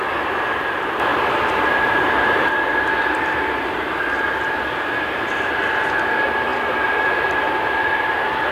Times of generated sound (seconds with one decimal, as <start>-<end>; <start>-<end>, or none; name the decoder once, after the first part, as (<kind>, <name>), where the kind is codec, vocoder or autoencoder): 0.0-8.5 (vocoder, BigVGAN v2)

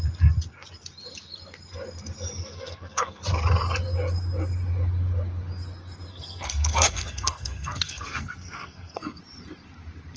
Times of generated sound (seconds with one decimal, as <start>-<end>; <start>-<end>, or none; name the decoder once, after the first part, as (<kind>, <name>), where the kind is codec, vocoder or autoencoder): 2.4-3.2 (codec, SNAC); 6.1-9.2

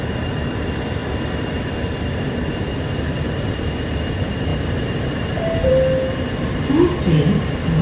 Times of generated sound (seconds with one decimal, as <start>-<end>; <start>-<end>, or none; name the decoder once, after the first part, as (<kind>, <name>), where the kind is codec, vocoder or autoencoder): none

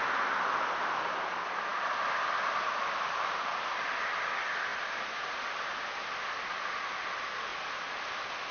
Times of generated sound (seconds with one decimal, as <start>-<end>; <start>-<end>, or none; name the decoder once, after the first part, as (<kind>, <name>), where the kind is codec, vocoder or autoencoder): 1.7-3.9 (vocoder, BigVGAN v2)